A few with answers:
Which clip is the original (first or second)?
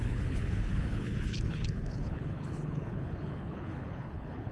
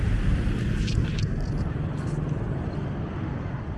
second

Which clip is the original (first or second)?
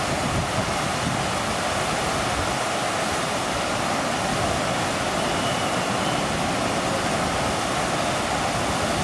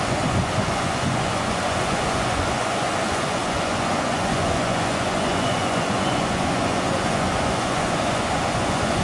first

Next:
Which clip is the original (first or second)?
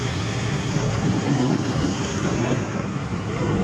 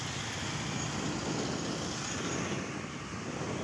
second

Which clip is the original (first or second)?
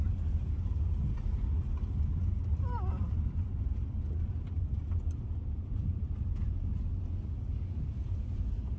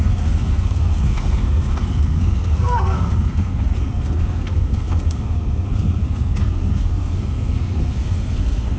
first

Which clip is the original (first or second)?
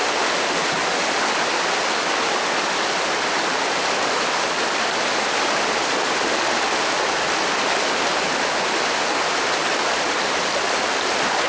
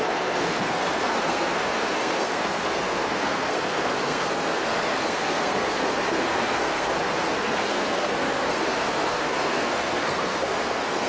first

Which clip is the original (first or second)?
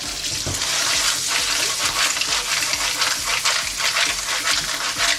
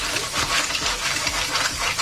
first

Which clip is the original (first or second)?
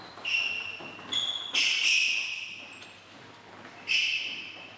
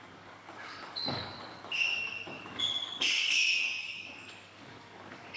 first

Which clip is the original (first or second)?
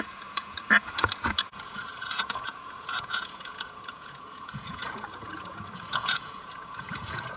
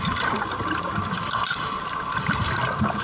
second